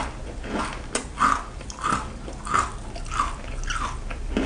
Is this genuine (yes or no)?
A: yes